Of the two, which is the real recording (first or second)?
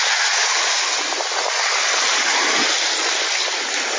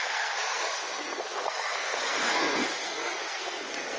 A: first